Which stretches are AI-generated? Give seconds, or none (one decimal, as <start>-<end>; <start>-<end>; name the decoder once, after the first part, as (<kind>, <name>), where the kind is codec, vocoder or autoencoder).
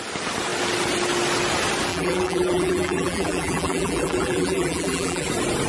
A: 1.9-5.3 (vocoder, BigVGAN v2)